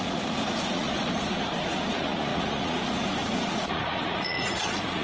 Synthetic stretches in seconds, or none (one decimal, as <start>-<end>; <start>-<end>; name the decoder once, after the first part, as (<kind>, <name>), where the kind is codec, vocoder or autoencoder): 0.0-5.0 (vocoder, Vocos)